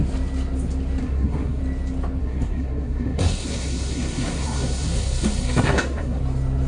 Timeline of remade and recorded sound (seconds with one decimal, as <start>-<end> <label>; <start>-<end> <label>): 0.0-1.0 recorded; 1.0-1.6 remade; 1.6-2.2 recorded; 2.2-6.2 remade; 6.2-6.7 recorded